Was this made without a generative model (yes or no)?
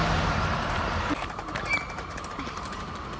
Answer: no